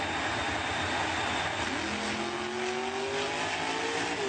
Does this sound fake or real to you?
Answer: real